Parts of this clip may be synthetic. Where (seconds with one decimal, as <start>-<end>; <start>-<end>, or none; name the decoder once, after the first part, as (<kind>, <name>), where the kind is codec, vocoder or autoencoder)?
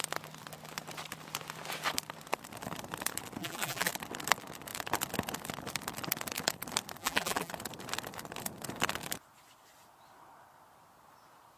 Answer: 3.4-3.9 (vocoder, BigVGAN v2); 7.0-7.5